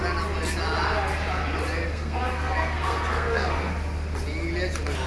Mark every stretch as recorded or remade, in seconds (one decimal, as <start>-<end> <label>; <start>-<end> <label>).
0.0-1.9 recorded; 1.9-3.7 remade; 3.7-5.1 recorded